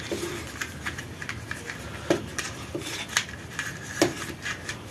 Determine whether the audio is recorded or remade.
recorded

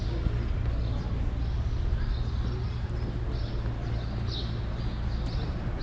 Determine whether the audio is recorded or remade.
recorded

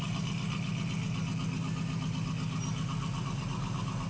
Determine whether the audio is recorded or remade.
recorded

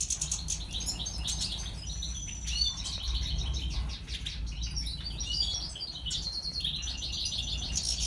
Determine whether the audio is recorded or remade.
recorded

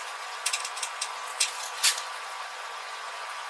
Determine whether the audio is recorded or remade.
remade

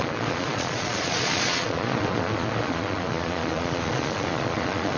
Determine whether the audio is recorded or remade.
remade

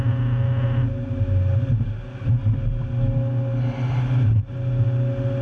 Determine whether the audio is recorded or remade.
recorded